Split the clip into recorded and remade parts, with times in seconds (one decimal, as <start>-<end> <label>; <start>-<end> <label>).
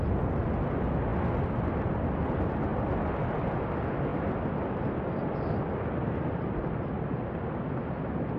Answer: 0.0-8.4 recorded